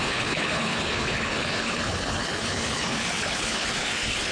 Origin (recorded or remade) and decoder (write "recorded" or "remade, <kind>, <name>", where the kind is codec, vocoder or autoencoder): remade, codec, HILCodec